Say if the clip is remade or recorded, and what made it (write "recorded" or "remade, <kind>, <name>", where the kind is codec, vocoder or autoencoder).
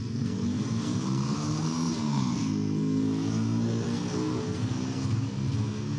remade, codec, SNAC